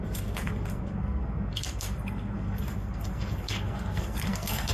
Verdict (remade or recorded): remade